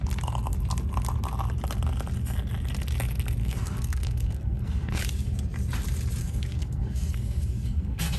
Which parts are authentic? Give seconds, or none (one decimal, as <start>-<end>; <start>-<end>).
0.0-3.4; 5.0-6.2

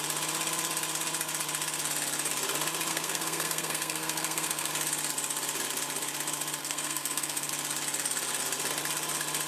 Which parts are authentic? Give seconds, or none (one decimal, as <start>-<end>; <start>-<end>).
0.0-2.9; 4.7-6.6; 7.5-9.5

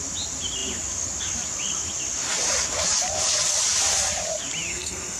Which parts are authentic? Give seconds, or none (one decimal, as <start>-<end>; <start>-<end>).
0.0-4.7

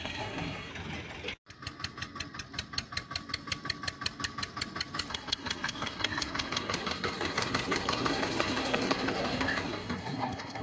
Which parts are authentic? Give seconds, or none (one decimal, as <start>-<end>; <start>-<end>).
0.7-5.1

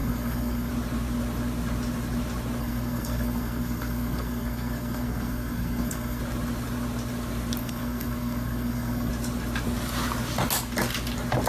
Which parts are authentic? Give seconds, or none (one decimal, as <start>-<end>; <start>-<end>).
0.7-2.6; 6.2-7.6; 9.1-11.5

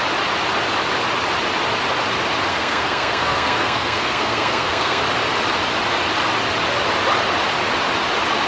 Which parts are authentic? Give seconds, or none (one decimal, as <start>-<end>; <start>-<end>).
0.0-2.5; 5.0-8.5

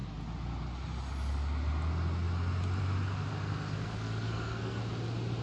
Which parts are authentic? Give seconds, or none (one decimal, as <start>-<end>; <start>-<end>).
0.0-3.3; 4.8-5.4

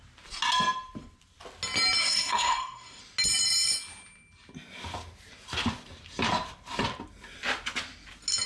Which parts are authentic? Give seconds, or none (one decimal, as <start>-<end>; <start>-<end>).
0.0-2.0; 3.0-8.5